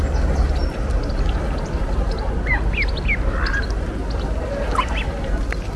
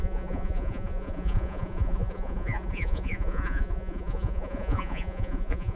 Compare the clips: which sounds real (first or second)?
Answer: first